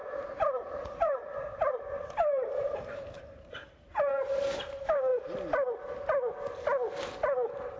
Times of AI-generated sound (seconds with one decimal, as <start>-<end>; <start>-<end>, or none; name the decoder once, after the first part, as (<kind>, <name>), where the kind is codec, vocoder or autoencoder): 0.0-5.1 (vocoder, BigVGAN v2)